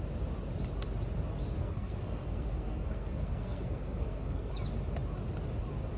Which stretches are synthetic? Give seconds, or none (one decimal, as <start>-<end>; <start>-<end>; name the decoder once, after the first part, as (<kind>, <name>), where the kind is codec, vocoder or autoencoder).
1.6-4.5 (codec, SNAC)